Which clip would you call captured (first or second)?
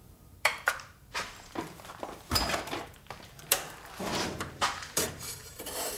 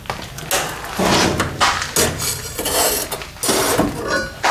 second